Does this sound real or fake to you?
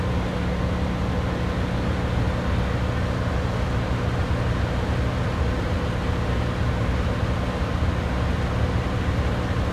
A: real